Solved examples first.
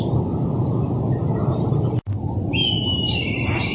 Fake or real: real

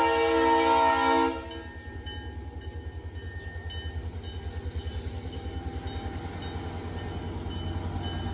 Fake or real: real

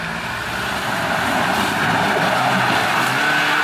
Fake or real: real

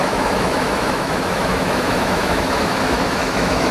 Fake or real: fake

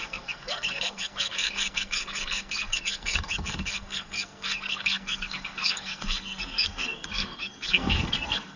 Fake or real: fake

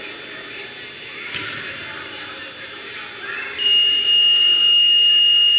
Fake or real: real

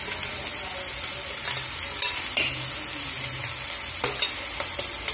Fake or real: real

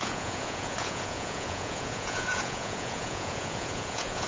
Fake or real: fake